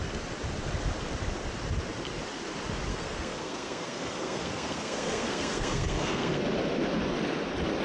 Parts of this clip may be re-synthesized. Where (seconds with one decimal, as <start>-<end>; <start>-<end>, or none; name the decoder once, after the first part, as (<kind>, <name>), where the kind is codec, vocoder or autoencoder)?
2.9-6.4 (codec, SNAC)